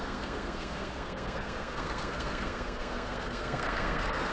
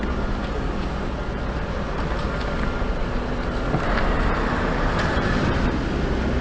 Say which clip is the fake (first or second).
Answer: first